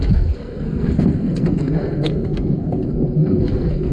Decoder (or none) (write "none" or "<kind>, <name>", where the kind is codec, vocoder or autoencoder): codec, SNAC